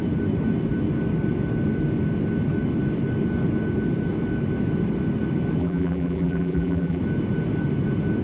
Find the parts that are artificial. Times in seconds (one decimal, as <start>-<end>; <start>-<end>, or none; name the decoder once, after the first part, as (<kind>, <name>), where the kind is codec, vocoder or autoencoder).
5.6-7.0 (vocoder, BigVGAN v2)